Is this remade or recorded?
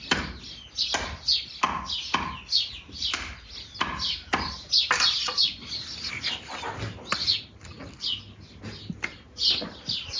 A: recorded